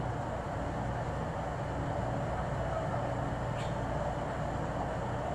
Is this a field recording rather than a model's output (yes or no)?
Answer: yes